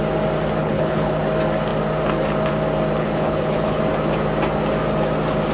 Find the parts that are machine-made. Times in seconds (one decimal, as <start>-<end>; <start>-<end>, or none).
0.6-1.2; 3.0-3.8